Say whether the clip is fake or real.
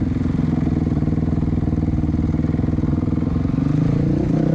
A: real